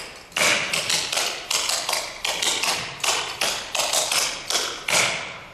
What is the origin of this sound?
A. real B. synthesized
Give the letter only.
A